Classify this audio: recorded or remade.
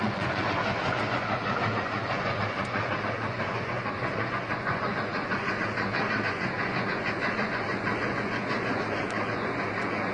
remade